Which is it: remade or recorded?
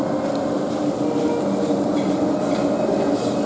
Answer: recorded